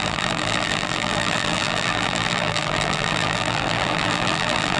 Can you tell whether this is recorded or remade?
remade